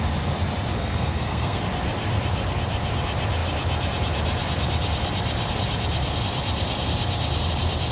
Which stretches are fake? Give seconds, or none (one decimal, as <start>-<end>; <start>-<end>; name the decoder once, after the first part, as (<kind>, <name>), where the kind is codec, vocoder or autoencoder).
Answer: 0.8-1.6 (codec, SNAC)